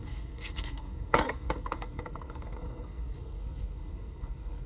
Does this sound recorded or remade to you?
remade